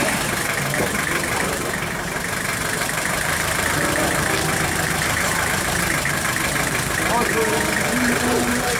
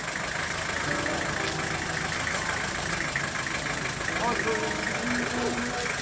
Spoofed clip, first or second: first